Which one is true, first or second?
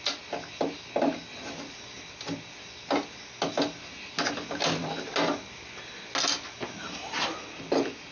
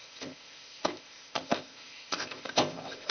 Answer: first